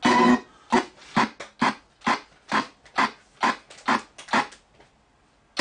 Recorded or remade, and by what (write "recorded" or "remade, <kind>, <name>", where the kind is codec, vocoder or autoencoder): recorded